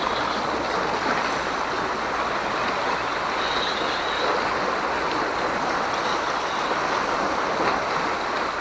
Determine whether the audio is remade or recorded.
recorded